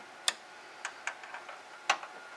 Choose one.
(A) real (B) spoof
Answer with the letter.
A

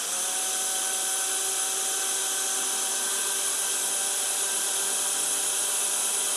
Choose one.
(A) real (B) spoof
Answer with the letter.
A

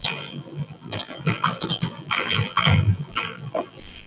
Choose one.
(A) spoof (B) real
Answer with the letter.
A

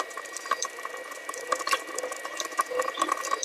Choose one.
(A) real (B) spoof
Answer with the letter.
B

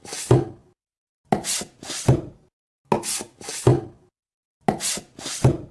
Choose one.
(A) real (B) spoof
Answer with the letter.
A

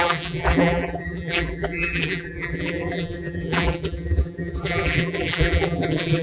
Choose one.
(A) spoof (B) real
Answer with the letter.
A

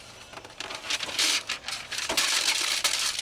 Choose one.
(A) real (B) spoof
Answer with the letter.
A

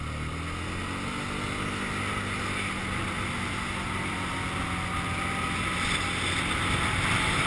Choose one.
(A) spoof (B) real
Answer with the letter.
B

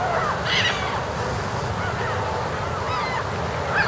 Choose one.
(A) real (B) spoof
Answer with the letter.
A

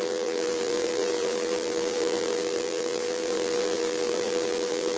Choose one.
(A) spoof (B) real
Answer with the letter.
A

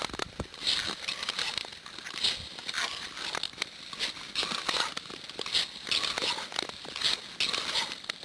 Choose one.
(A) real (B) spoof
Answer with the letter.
A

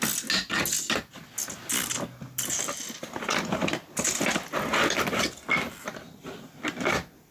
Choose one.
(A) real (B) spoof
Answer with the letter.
A